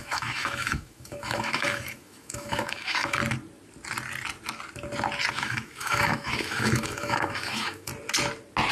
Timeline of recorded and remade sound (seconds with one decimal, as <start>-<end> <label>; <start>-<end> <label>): 0.0-3.2 remade; 3.2-5.3 recorded; 5.3-7.9 remade; 7.9-8.7 recorded

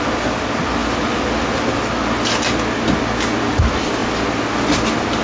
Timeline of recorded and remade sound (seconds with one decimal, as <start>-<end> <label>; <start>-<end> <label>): 0.0-5.2 recorded

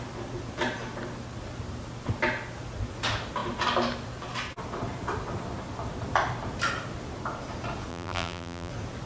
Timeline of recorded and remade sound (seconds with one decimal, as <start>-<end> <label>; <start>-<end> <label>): 0.0-7.9 recorded; 7.9-8.7 remade; 8.7-9.1 recorded

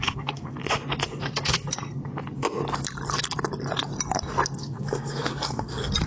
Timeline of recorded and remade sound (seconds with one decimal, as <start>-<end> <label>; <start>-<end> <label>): 0.0-0.6 remade; 0.6-1.1 recorded; 1.1-2.0 remade; 2.0-4.6 recorded; 4.6-6.1 remade

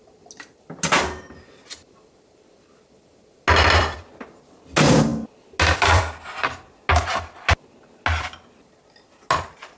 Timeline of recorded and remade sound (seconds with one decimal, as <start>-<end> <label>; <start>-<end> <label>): 0.0-9.8 recorded

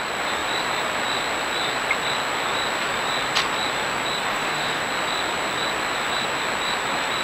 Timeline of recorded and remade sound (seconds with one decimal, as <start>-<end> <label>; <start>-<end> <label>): 0.0-4.3 recorded; 4.3-4.8 remade; 4.8-7.2 recorded

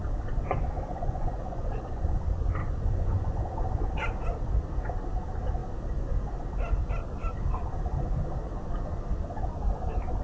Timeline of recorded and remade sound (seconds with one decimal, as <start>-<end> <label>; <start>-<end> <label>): 0.0-0.9 recorded; 0.9-2.0 remade; 2.0-2.6 recorded; 2.6-3.4 remade; 3.4-10.2 recorded

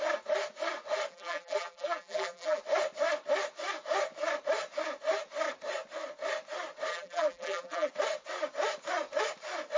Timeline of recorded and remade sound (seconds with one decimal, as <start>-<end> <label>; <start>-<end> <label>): 0.0-1.1 recorded; 1.1-2.6 remade; 2.6-6.9 recorded; 6.9-7.9 remade; 7.9-9.8 recorded